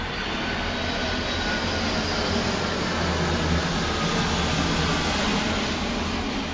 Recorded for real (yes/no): yes